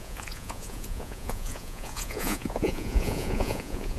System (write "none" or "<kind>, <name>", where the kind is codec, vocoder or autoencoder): vocoder, Vocos